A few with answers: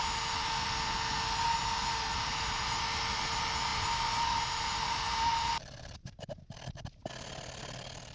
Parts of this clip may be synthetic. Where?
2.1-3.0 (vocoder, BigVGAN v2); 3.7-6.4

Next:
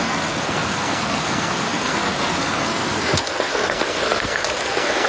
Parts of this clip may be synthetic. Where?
0.0-5.1 (codec, SNAC)

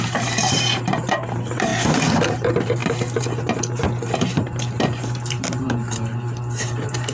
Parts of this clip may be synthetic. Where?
0.0-1.7 (vocoder, BigVGAN v2); 2.3-2.8; 3.8-7.1

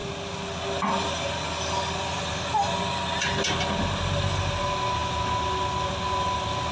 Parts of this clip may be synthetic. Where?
none

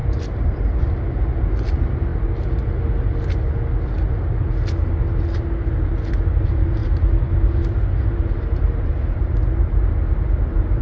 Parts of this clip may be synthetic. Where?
0.0-0.8 (vocoder, BigVGAN v2); 6.8-10.1

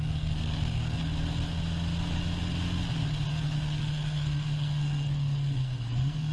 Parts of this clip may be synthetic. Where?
0.0-1.0 (codec, SNAC); 3.3-6.3

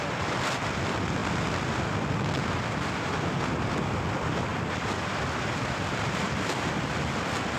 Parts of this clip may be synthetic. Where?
none